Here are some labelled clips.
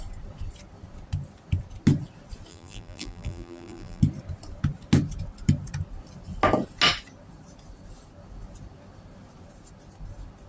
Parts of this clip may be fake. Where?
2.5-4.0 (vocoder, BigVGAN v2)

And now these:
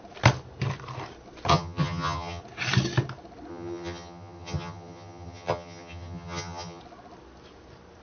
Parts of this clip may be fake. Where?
1.5-2.4 (vocoder, HiFi-GAN); 3.5-6.8

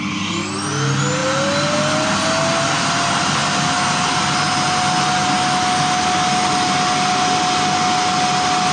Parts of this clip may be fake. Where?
none

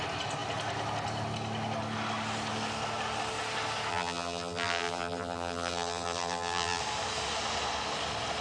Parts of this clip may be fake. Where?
3.9-6.8 (vocoder, BigVGAN v2)